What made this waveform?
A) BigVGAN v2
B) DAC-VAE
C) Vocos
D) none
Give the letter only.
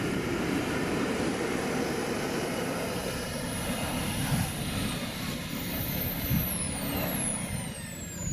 A